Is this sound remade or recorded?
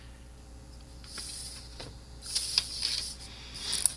recorded